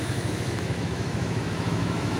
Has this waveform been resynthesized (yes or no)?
yes